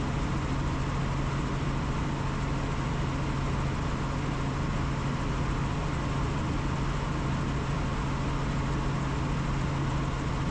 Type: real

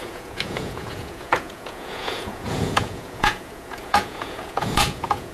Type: fake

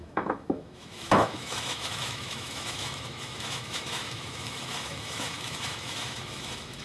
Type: fake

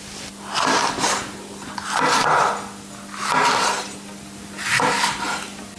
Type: real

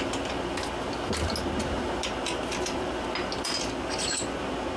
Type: real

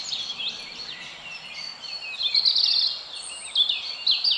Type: real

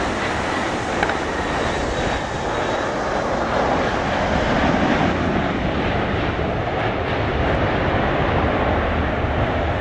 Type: real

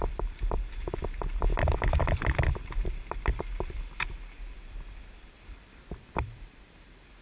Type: fake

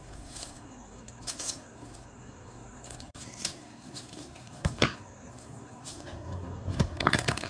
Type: fake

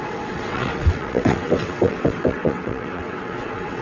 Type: fake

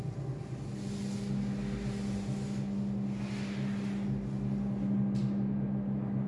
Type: real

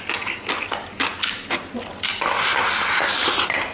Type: real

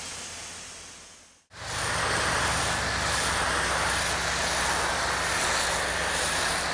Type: real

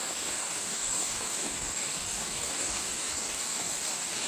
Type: fake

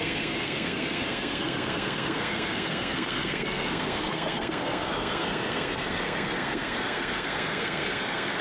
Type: fake